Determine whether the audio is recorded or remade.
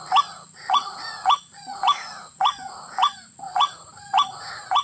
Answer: remade